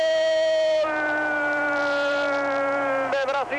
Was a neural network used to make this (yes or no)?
no